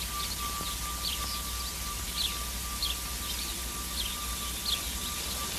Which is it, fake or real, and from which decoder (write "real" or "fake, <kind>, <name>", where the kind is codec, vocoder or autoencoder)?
real